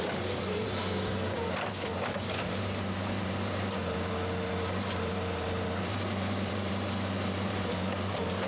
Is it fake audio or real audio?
fake